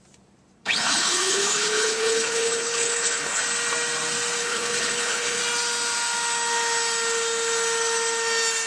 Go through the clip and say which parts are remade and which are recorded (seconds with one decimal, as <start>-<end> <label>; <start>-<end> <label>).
0.0-0.6 recorded; 0.6-3.4 remade; 3.4-4.4 recorded; 4.4-5.4 remade; 5.4-8.7 recorded